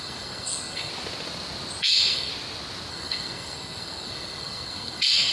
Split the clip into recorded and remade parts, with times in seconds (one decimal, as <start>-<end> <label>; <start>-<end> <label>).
0.0-0.9 remade; 0.9-1.8 recorded; 1.8-2.3 remade; 2.3-2.9 recorded; 2.9-5.3 remade